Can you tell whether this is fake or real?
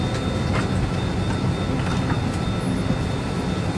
real